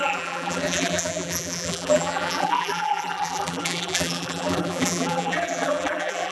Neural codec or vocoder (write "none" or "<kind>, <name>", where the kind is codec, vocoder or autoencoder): vocoder, BigVGAN v2